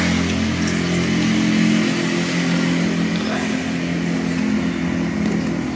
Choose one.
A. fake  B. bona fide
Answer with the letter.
B